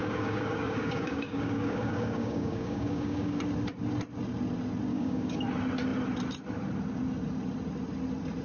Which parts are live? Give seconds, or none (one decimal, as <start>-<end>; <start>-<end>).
3.4-4.9; 5.4-8.4